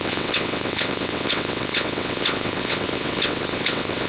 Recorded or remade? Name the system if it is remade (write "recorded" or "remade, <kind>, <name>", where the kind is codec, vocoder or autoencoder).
remade, vocoder, WaveNeXt